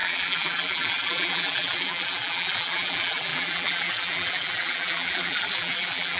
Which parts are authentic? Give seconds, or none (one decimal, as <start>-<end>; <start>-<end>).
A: none

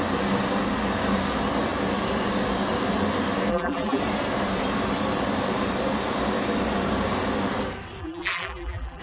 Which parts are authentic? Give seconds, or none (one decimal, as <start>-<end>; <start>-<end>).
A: 0.0-3.5; 4.0-8.0

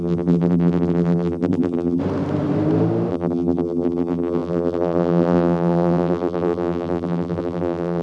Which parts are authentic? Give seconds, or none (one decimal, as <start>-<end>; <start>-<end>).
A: 2.0-3.1

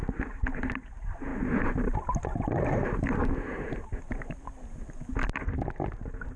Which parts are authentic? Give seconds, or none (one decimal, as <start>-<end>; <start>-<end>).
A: 0.0-1.3; 5.1-6.4

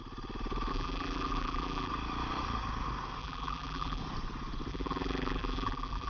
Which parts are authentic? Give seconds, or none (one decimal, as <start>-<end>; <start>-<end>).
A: 0.0-0.7; 1.9-3.2; 4.0-4.7

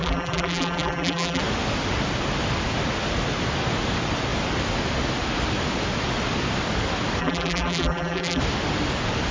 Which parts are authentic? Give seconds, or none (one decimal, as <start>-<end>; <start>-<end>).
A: 1.4-7.2; 8.4-9.3

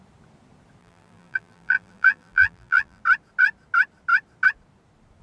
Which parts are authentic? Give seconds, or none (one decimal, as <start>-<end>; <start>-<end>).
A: 0.0-0.8; 3.0-5.2